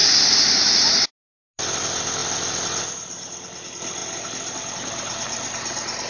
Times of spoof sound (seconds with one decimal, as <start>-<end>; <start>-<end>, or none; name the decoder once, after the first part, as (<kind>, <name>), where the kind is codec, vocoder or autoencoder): none

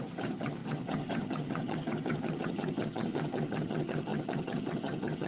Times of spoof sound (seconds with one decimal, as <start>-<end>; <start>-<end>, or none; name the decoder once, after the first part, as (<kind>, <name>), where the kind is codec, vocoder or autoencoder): 0.0-5.3 (vocoder, HiFi-GAN)

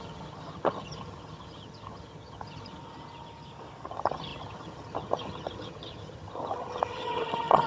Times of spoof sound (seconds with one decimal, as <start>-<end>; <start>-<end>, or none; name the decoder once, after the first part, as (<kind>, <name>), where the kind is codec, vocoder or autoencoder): 0.0-2.8 (vocoder, HiFi-GAN); 3.9-7.7

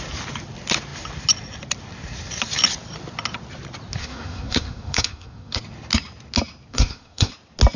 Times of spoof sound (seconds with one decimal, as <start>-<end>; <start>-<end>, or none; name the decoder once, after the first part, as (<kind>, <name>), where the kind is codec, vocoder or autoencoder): 4.0-5.6 (codec, SNAC); 6.7-7.3

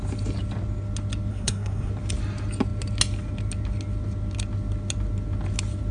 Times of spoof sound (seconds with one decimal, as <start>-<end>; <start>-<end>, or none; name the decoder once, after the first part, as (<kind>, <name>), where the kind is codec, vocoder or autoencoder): 1.3-1.9 (codec, SNAC)

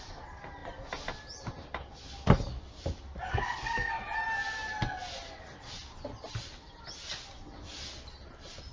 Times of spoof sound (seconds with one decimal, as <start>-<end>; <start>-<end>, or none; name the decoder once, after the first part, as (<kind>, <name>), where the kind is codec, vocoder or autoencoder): 3.3-3.9 (codec, SNAC)

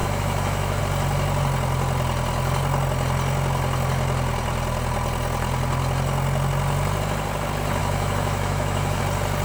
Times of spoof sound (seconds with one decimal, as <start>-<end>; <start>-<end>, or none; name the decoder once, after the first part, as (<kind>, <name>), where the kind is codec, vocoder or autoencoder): 0.0-0.8 (autoencoder, DAC-VAE); 7.8-9.0